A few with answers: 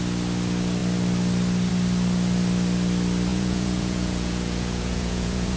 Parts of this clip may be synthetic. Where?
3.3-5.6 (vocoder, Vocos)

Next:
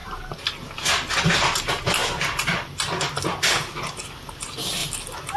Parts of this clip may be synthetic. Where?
none